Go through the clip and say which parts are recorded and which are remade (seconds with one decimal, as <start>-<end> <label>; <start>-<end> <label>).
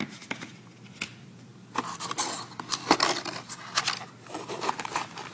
0.0-5.3 recorded